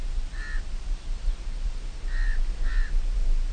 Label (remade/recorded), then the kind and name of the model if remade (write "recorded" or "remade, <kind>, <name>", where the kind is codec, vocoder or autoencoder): recorded